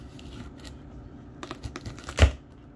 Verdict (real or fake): real